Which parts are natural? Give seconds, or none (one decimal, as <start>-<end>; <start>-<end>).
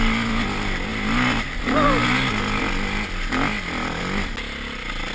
0.0-5.1